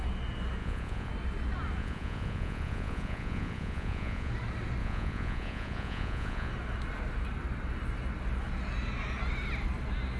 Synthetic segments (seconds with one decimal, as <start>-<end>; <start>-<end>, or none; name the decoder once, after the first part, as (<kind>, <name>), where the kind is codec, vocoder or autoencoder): 0.6-1.1 (vocoder, Vocos); 1.8-4.3; 4.8-6.5